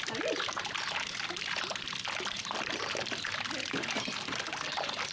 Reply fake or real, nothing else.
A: real